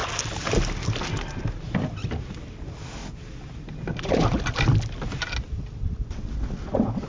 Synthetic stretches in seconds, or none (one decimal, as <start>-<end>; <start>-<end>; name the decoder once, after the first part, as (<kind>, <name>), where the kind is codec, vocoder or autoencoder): none

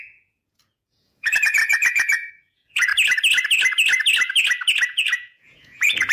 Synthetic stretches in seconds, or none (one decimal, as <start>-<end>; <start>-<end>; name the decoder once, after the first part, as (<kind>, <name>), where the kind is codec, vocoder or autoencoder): 0.0-2.9 (vocoder, Vocos); 4.9-6.1

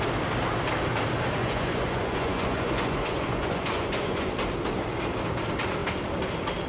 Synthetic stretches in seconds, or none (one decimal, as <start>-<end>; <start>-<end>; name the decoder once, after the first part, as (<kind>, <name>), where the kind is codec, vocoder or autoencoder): 1.4-4.3 (vocoder, Vocos)

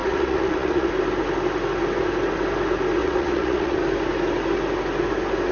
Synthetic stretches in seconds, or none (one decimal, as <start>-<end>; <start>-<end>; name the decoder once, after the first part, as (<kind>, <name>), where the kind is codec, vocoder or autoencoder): 0.0-0.9 (vocoder, Vocos); 3.0-3.8

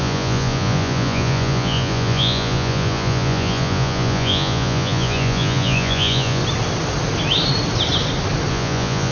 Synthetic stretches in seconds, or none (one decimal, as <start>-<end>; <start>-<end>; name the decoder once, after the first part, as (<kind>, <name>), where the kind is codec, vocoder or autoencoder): 0.0-6.4 (vocoder, Vocos); 8.5-9.1